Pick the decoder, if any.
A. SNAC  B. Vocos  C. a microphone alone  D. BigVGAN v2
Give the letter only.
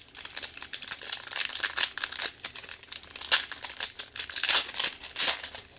C